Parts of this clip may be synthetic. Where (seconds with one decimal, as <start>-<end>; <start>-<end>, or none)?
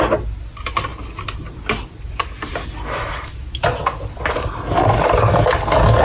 none